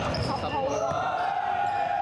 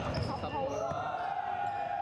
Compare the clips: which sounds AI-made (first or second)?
first